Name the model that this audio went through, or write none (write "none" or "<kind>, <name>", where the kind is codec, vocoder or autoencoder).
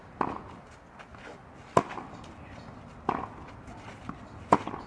none